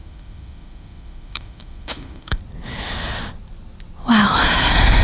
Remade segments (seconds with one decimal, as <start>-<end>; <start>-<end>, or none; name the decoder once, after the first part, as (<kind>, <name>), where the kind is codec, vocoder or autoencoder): 0.0-2.4 (autoencoder, DAC-VAE)